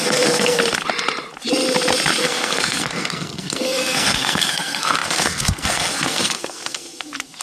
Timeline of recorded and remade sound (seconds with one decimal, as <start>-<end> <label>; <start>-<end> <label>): 0.0-0.6 remade; 0.6-2.2 recorded; 2.2-7.4 remade